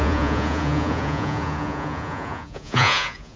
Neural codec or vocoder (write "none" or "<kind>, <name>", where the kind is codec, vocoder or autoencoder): vocoder, Vocos